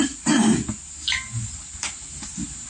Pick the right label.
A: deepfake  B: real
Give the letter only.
A